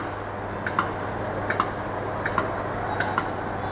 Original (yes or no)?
yes